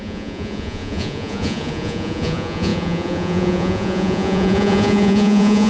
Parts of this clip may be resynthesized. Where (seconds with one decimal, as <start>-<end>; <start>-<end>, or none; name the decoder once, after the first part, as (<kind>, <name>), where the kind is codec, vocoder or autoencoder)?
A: 0.0-5.7 (vocoder, Vocos)